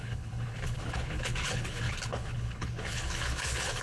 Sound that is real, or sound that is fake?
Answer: fake